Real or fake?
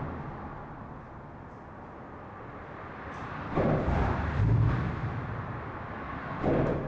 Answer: real